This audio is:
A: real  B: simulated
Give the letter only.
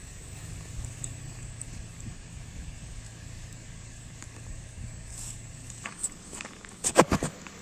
B